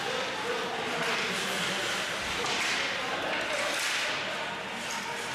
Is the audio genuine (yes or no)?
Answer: yes